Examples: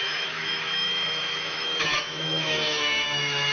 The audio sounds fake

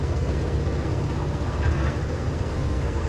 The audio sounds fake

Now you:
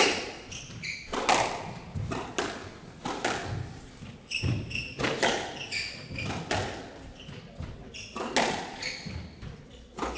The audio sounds real